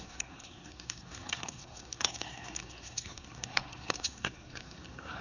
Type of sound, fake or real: fake